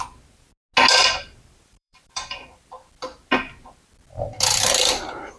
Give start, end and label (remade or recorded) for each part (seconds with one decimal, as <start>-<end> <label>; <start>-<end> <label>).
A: 0.0-0.9 recorded; 0.9-2.6 remade; 2.6-5.4 recorded